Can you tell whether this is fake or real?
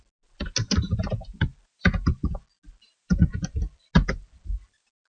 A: real